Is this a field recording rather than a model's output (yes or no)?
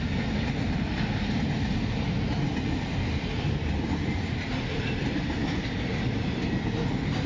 yes